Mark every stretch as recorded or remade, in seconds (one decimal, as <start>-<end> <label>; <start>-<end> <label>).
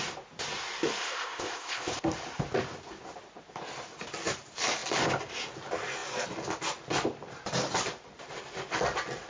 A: 0.0-1.0 recorded; 1.0-1.9 remade; 1.9-9.3 recorded